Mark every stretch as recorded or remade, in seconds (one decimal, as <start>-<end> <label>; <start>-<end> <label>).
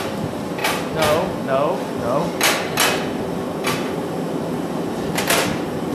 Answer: 0.0-0.6 remade; 0.6-3.6 recorded; 3.6-5.9 remade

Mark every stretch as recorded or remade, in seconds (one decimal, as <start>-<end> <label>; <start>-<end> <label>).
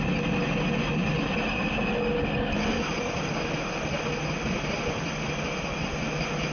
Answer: 0.0-6.5 recorded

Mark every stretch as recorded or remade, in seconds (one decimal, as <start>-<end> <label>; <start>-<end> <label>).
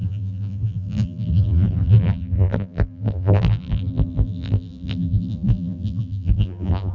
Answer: 0.0-6.9 remade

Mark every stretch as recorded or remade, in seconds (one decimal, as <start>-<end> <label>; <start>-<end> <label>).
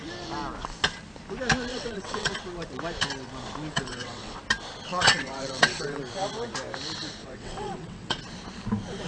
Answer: 0.0-1.7 recorded; 1.7-2.3 remade; 2.3-3.7 recorded; 3.7-4.4 remade; 4.4-4.9 recorded; 4.9-6.0 remade; 6.0-7.2 recorded; 7.2-8.2 remade; 8.2-9.1 recorded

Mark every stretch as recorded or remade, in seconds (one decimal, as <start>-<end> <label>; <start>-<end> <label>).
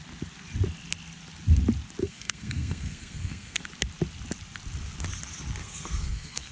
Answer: 0.0-2.0 recorded; 2.0-3.6 remade; 3.6-5.6 recorded; 5.6-6.5 remade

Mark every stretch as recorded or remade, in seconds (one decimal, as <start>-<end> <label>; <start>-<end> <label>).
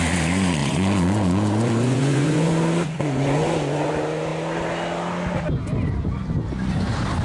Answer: 0.0-0.6 recorded; 0.6-3.9 remade; 3.9-7.2 recorded